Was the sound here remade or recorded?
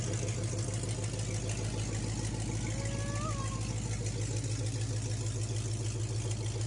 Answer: recorded